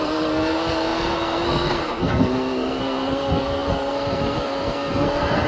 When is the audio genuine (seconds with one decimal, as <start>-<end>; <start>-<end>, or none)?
none